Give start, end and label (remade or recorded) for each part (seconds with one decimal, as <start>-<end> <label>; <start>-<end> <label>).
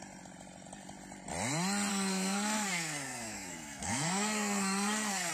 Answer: 0.0-1.9 recorded; 1.9-5.3 remade